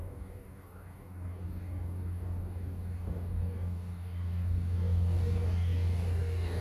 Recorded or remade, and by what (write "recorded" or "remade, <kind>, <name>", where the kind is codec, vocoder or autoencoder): remade, codec, DAC